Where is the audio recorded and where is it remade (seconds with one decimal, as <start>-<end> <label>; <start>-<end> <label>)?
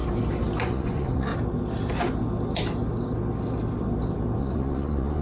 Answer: 0.0-0.6 recorded; 0.6-1.3 remade; 1.3-4.4 recorded; 4.4-5.2 remade